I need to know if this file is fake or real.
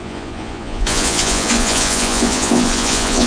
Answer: fake